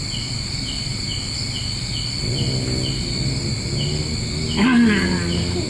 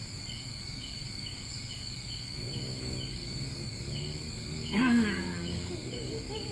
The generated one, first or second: second